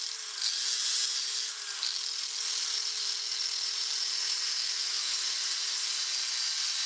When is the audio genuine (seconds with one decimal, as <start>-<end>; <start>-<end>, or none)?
0.0-4.6; 5.4-6.9